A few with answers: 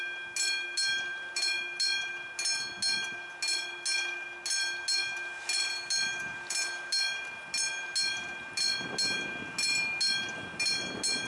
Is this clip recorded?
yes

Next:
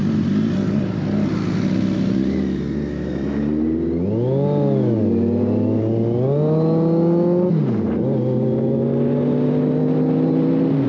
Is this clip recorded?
yes